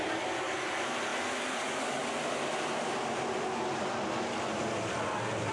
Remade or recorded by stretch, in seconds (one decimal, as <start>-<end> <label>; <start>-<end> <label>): 0.0-5.5 recorded